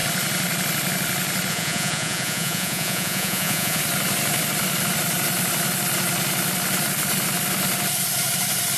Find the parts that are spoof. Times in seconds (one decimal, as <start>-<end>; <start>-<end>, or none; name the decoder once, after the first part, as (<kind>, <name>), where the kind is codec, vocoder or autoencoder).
1.5-3.8 (vocoder, Vocos)